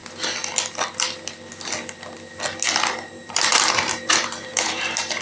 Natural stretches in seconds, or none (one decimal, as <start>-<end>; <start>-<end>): 0.0-3.1

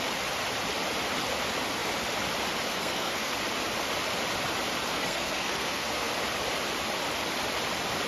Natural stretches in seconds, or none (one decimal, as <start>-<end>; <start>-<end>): 0.0-2.7; 3.4-4.9; 6.1-8.1

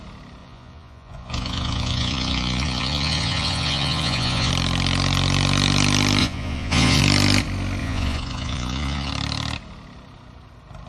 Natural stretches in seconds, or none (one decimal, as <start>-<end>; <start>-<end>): 0.0-0.4; 4.5-6.2; 7.0-7.8; 9.1-10.9

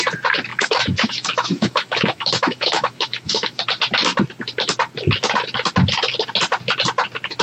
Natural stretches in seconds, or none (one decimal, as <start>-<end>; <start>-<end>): 0.0-0.5; 3.6-7.4

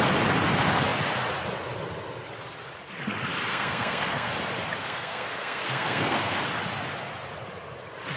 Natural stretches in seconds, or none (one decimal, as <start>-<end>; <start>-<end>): 0.0-3.5; 4.3-4.8; 6.4-8.2

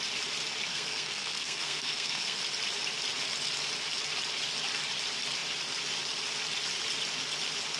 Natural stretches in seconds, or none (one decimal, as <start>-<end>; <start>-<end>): 0.0-0.7; 2.4-7.8

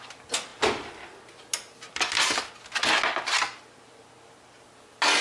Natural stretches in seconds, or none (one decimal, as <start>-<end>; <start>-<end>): 0.0-5.2

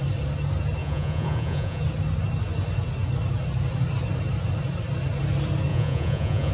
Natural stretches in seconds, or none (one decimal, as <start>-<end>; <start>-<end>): 0.0-0.8; 1.8-5.7